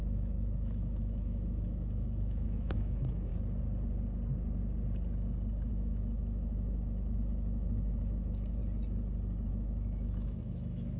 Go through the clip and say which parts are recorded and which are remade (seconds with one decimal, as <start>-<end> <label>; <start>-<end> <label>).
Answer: 0.0-3.3 remade; 3.3-5.7 recorded; 5.7-8.6 remade; 8.6-9.5 recorded; 9.5-11.0 remade